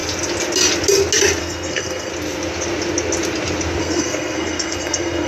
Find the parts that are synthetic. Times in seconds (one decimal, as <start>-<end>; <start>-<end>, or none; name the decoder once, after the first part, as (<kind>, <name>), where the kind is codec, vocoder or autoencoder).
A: 1.4-2.1 (codec, SNAC); 3.8-5.3